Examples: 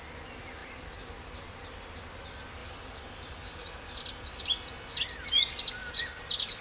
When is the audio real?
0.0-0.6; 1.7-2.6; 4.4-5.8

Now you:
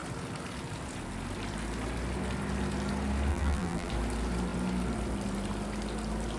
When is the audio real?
0.0-3.3; 3.9-6.4